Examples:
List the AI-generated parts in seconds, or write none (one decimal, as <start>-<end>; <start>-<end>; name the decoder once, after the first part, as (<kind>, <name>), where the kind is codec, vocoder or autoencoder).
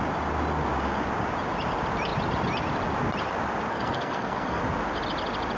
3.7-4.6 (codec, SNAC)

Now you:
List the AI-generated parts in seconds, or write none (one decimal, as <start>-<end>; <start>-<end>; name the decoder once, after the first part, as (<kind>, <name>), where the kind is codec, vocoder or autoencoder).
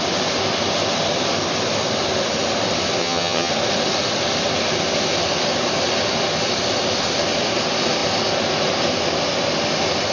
3.0-3.5 (vocoder, HiFi-GAN)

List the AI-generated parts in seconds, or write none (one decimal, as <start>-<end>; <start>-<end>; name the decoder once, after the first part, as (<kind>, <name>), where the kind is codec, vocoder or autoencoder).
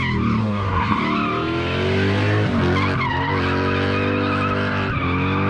0.4-1.0 (codec, SNAC)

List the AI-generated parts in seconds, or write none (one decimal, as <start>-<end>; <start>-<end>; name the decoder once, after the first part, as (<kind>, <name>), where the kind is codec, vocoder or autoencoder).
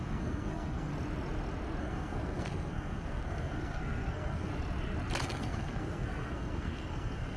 0.0-0.9 (codec, SNAC); 1.8-4.5; 5.2-7.4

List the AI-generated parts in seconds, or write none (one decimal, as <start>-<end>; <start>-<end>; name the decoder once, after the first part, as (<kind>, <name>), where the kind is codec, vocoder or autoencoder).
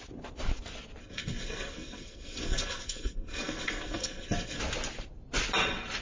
1.0-4.6 (codec, SNAC)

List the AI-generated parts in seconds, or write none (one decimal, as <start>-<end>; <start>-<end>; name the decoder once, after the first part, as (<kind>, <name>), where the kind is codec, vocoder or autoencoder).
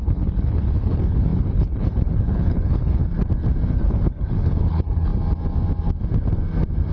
0.0-3.0 (codec, HILCodec); 3.7-5.1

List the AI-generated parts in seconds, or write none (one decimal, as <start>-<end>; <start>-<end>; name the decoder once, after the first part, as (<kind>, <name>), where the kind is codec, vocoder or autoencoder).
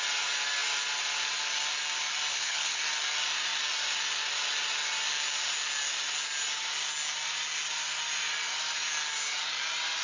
2.3-2.8 (codec, HILCodec)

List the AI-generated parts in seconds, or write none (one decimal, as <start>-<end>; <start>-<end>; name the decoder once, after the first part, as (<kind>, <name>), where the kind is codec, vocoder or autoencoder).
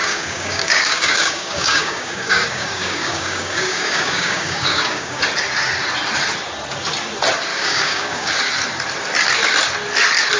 0.0-5.2 (codec, DAC); 7.5-8.3